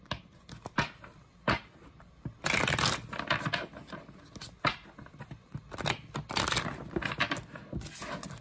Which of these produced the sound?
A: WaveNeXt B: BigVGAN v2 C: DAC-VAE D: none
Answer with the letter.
D